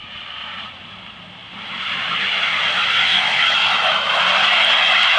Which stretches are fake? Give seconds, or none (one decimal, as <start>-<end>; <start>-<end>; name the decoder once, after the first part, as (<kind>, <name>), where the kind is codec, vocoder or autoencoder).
3.1-4.2 (autoencoder, DAC-VAE)